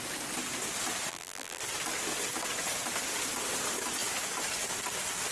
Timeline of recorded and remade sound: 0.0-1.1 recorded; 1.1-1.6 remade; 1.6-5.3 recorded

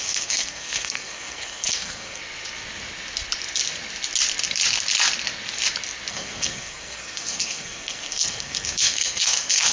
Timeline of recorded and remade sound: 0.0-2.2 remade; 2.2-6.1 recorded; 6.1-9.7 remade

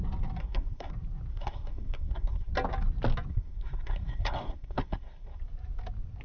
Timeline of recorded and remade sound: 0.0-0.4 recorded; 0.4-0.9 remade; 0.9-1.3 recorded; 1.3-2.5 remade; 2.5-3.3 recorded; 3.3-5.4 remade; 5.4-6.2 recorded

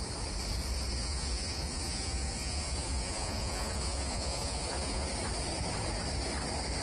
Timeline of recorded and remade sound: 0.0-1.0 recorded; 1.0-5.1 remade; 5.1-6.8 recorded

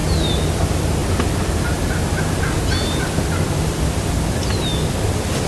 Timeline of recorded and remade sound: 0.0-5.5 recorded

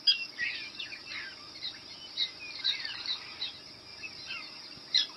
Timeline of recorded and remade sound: 0.0-1.0 recorded; 1.0-3.5 remade; 3.5-3.9 recorded; 3.9-5.2 remade